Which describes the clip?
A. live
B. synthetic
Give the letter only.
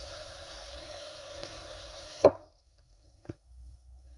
B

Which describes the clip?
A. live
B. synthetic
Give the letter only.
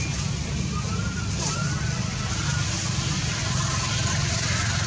A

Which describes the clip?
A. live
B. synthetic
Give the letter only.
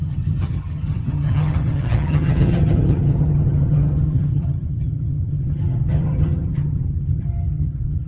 B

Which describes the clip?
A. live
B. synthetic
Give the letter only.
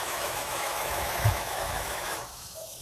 B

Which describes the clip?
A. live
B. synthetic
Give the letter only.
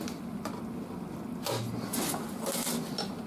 A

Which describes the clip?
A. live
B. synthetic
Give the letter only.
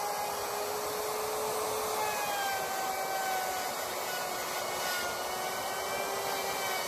A